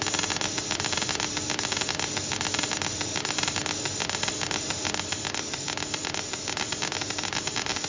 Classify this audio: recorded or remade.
recorded